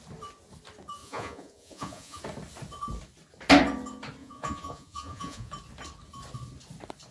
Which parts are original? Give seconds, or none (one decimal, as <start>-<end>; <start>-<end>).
0.0-1.0; 2.2-4.2; 5.5-7.1

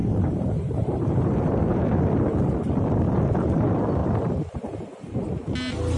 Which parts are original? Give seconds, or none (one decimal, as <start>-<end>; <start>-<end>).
1.8-4.0; 4.6-6.0